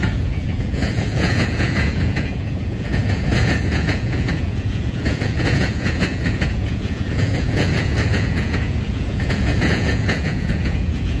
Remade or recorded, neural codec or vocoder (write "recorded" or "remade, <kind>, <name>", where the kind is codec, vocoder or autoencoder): remade, vocoder, Vocos